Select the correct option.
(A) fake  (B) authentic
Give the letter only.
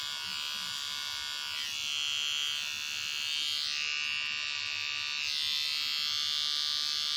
B